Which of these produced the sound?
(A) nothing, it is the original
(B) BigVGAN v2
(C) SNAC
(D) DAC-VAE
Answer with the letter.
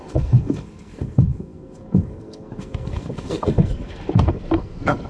C